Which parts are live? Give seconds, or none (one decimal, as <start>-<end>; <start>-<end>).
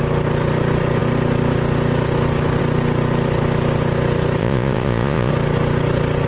0.0-4.4; 5.3-6.3